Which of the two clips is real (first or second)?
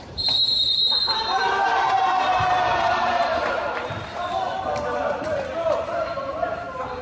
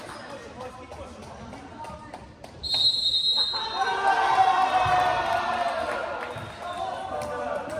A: second